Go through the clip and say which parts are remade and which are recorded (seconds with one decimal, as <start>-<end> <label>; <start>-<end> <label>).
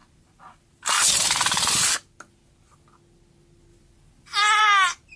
0.0-2.2 remade; 2.2-3.7 recorded; 3.7-4.6 remade; 4.6-5.2 recorded